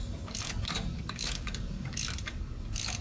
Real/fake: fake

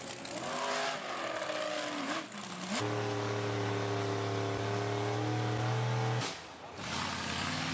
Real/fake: real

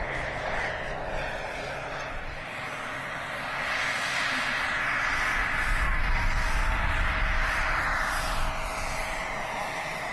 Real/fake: real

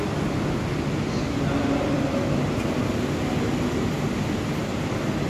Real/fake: real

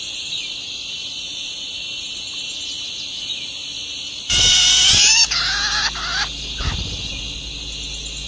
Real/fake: real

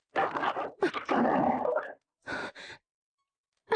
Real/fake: fake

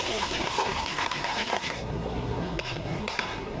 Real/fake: fake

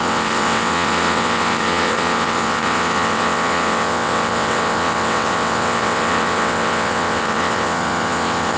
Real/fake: fake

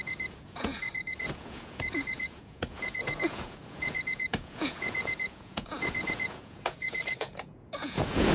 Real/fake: fake